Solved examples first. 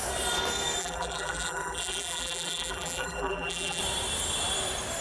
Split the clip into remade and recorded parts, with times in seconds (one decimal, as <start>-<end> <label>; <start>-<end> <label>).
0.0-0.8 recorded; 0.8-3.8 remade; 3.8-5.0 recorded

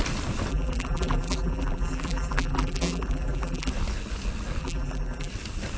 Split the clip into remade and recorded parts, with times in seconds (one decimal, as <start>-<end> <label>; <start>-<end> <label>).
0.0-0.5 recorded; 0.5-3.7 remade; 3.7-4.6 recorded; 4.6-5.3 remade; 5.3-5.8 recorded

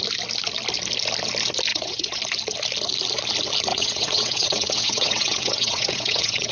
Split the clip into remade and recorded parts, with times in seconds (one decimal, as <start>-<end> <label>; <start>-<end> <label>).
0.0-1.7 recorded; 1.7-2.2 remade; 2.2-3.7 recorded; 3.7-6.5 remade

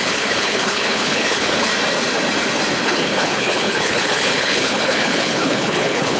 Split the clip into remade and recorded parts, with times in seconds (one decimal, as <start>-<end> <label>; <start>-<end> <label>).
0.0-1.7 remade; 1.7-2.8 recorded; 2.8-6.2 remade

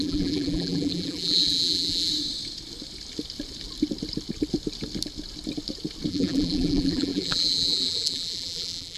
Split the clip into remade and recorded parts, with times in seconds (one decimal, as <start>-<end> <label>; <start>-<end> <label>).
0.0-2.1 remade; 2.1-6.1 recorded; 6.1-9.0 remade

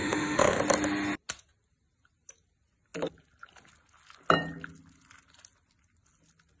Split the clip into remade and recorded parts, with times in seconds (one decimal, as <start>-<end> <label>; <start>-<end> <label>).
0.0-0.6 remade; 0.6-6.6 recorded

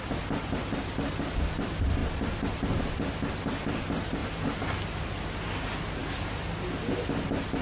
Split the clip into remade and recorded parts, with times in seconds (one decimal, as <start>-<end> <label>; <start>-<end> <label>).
0.0-7.6 recorded